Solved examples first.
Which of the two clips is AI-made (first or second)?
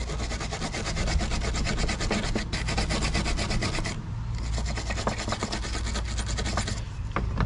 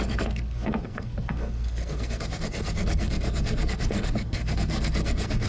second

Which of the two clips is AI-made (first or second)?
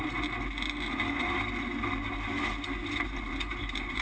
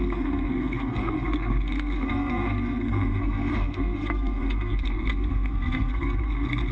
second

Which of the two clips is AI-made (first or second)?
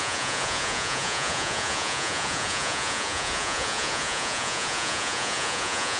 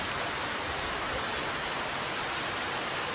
first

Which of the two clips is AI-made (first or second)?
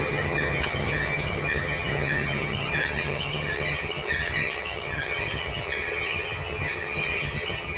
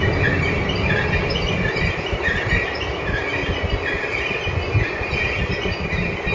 first